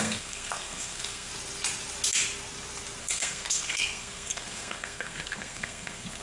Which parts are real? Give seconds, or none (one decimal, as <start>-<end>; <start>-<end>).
1.3-3.0